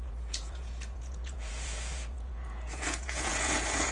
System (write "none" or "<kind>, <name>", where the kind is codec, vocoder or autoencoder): vocoder, Vocos